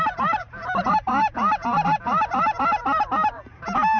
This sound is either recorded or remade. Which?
remade